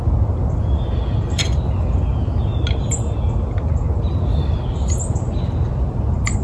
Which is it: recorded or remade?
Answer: recorded